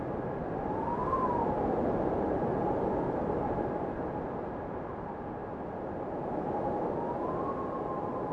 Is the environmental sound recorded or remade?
recorded